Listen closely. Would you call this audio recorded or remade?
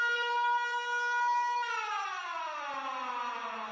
recorded